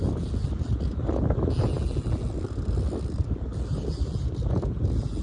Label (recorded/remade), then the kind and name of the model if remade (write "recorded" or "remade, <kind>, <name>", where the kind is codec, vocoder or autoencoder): recorded